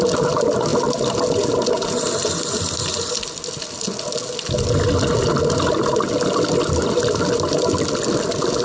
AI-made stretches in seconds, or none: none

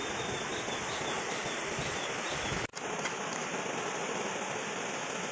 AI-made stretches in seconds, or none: none

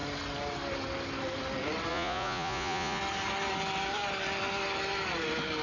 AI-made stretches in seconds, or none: 1.9-3.0 (vocoder, Vocos)

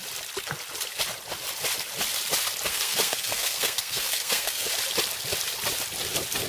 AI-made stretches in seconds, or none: 2.7-4.7 (codec, SNAC)

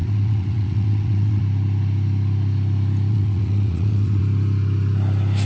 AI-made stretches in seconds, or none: 0.0-1.4 (vocoder, WaveNeXt); 3.1-4.2

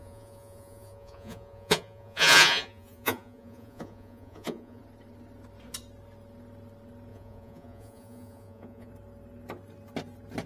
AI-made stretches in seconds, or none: 0.0-4.8 (vocoder, Vocos); 7.1-8.9

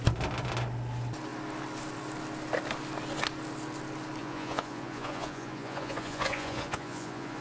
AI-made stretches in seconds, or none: 4.2-7.4 (vocoder, Vocos)